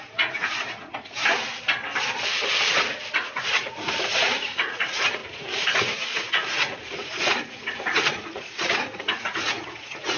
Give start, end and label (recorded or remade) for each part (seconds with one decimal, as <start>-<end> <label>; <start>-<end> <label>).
0.0-1.2 remade; 1.2-3.1 recorded; 3.1-10.2 remade